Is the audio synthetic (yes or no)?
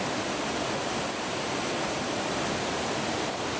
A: no